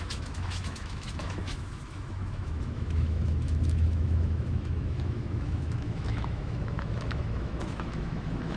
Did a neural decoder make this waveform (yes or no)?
yes